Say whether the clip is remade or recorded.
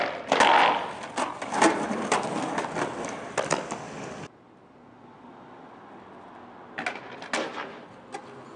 recorded